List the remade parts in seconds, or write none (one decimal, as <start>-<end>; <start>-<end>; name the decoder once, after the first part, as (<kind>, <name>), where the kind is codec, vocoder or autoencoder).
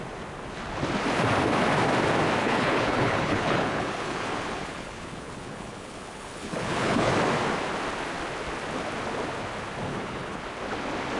2.4-7.1 (codec, HILCodec); 9.9-10.4